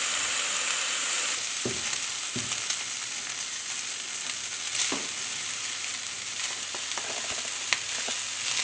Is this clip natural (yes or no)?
yes